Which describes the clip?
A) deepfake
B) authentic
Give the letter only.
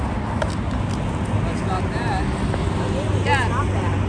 B